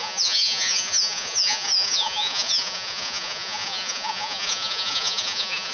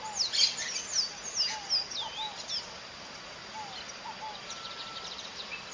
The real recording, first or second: second